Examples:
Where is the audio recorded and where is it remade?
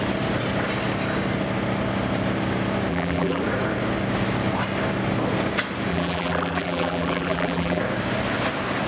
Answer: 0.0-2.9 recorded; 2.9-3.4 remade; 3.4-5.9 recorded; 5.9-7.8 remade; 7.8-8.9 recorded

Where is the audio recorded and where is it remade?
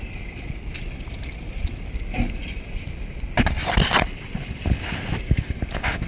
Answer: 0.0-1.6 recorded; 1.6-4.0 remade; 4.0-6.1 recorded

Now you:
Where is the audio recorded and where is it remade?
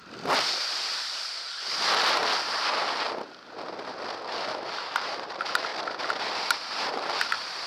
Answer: 0.0-4.3 recorded; 4.3-5.7 remade; 5.7-6.3 recorded; 6.3-7.7 remade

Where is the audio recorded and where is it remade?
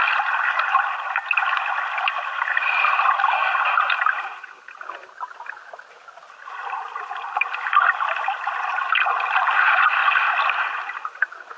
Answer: 0.0-11.6 recorded